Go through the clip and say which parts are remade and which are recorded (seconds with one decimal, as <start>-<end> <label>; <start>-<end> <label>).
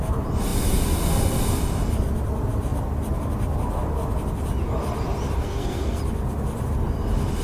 0.0-5.4 recorded; 5.4-6.0 remade; 6.0-7.4 recorded